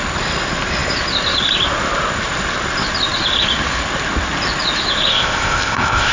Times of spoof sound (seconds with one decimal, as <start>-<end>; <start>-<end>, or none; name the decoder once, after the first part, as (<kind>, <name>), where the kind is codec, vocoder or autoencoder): 5.1-6.1 (codec, ZipCodec)